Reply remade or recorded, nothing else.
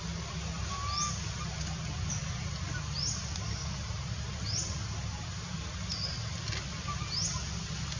recorded